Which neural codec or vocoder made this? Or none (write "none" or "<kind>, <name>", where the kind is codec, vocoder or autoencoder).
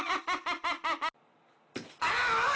none